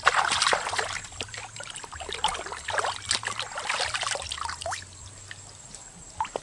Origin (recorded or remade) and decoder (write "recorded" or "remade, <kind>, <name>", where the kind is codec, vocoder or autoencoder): recorded